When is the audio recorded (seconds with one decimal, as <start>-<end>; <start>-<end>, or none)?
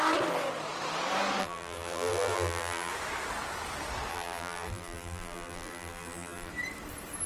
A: 0.0-1.4; 2.9-4.1; 6.5-7.3